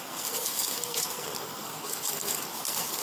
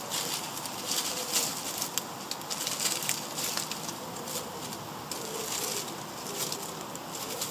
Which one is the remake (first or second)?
first